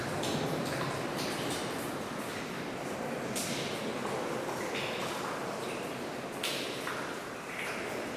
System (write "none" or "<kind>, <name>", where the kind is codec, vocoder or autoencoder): none